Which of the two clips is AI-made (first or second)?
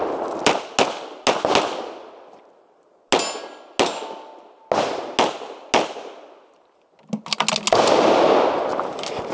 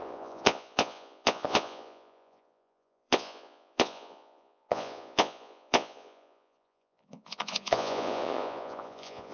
second